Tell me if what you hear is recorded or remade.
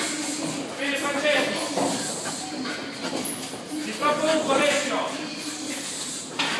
recorded